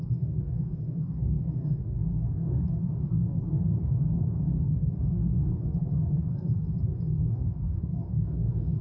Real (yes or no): no